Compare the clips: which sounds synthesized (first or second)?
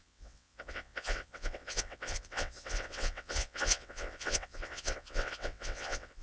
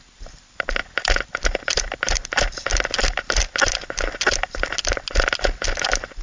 first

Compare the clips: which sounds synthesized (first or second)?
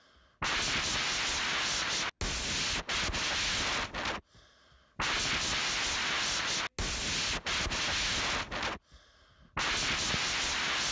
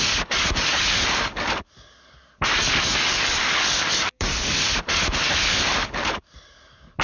second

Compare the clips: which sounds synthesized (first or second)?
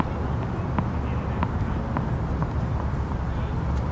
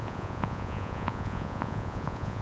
second